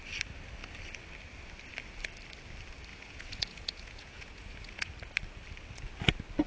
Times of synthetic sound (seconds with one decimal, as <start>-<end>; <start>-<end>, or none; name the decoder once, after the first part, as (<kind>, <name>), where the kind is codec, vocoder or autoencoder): 2.9-4.9 (vocoder, Vocos)